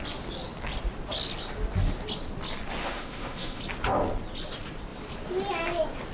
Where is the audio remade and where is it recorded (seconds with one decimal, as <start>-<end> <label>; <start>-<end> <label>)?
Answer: 0.0-2.8 recorded; 2.8-3.6 remade; 3.6-6.1 recorded